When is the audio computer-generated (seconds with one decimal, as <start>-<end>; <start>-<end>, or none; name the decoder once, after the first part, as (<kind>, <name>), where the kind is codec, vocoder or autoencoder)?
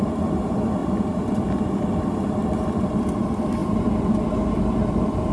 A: 0.0-0.8 (vocoder, BigVGAN v2); 1.3-5.3